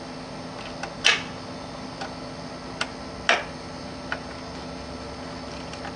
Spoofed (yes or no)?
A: no